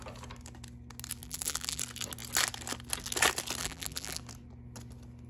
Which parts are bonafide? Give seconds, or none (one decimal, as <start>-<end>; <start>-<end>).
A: 0.0-1.2; 1.8-3.6; 4.2-5.3